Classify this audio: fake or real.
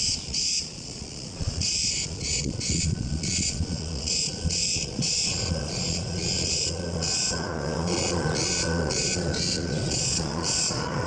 fake